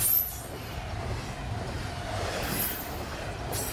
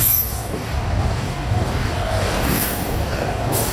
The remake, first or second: second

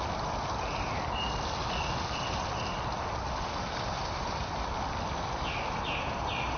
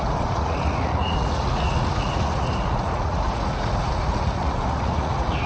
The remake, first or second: second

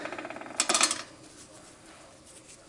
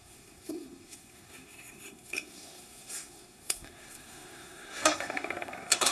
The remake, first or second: second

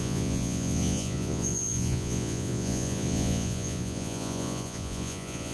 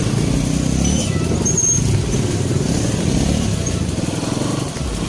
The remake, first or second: first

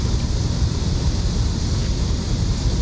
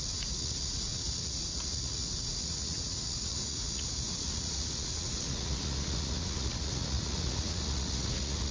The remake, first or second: second